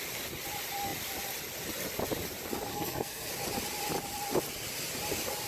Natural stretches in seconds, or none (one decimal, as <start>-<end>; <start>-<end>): 0.0-2.7; 3.3-5.5